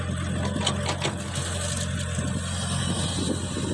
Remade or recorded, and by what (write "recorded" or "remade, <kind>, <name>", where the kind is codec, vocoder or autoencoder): recorded